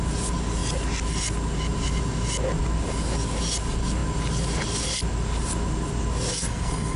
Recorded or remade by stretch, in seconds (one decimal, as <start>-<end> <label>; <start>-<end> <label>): 0.0-6.3 recorded; 6.3-7.0 remade